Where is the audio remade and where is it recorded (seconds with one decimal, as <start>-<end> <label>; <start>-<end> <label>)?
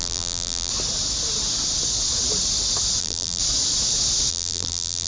0.0-0.7 remade; 0.7-3.0 recorded; 3.0-3.4 remade; 3.4-4.3 recorded; 4.3-5.1 remade